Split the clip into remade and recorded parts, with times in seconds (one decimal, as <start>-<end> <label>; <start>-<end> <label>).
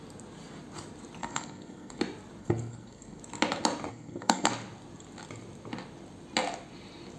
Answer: 0.0-1.2 recorded; 1.2-2.0 remade; 2.0-2.4 recorded; 2.4-3.2 remade; 3.2-3.9 recorded; 3.9-4.5 remade; 4.5-7.2 recorded